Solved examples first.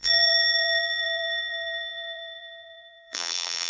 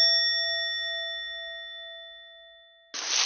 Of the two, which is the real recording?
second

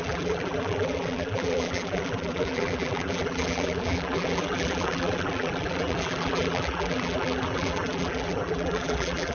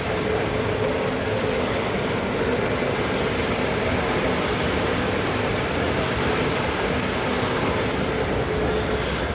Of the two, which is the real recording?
second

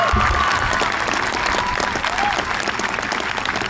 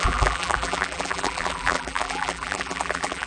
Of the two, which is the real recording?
first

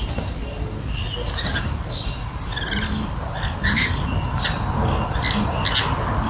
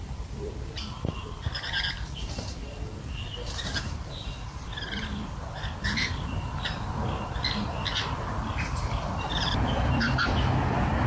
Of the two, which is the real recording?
first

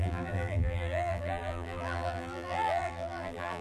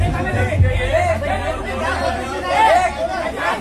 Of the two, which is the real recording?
second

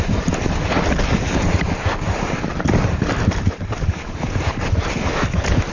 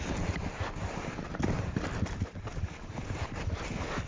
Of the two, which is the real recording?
second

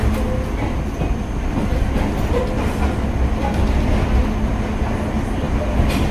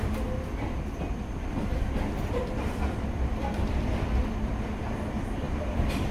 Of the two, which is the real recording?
first